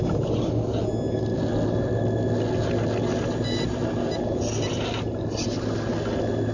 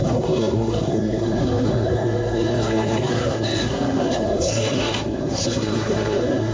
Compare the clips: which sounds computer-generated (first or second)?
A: second